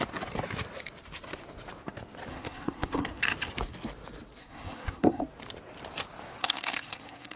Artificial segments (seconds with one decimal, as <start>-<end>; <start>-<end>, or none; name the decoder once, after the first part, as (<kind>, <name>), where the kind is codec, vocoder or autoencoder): 2.3-3.2 (codec, SNAC); 4.4-5.2; 6.4-7.4